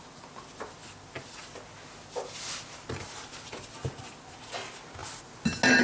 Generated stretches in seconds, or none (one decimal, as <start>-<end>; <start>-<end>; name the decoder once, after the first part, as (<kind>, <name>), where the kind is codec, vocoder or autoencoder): none